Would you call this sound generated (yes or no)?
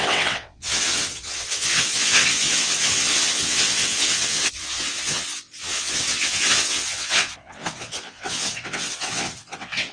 yes